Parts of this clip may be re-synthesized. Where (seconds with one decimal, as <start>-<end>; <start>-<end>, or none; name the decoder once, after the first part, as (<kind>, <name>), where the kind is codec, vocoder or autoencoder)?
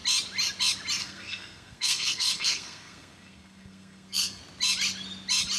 1.0-4.4 (codec, SNAC)